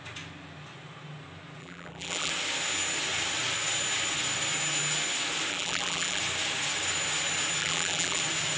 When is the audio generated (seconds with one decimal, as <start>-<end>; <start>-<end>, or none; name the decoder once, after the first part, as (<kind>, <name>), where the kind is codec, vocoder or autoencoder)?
1.6-2.3 (vocoder, BigVGAN v2); 5.5-6.2; 7.6-8.2